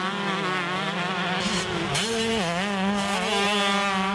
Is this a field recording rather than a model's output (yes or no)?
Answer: yes